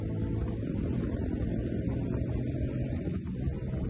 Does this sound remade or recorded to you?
recorded